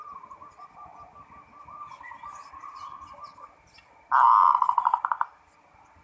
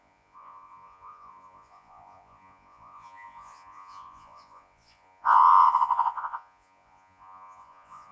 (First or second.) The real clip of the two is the first